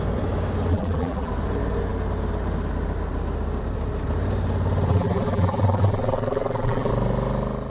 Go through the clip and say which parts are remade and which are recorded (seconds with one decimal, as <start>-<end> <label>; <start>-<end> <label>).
0.0-0.7 recorded; 0.7-1.3 remade; 1.3-4.9 recorded; 4.9-6.9 remade; 6.9-7.7 recorded